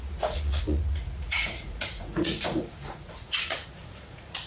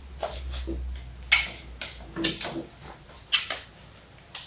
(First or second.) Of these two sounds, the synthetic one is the first